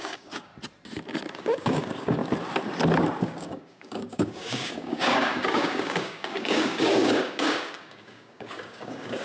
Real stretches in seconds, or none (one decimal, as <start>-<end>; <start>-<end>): 0.5-1.3; 2.2-3.2